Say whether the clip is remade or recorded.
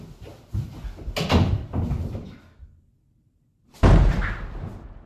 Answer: recorded